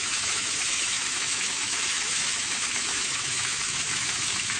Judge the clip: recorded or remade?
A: remade